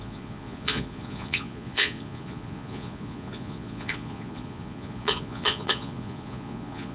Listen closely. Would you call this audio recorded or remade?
remade